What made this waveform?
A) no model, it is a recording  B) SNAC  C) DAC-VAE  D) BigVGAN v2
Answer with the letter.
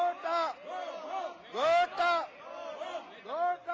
A